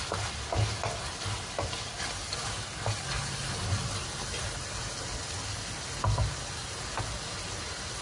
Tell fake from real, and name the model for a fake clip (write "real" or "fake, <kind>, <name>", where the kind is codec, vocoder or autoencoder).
real